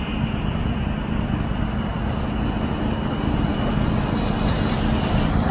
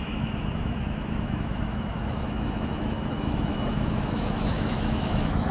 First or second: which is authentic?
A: first